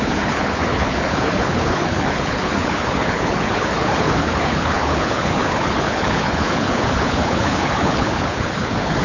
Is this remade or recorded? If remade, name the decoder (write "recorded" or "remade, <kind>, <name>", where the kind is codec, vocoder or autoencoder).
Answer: remade, codec, HILCodec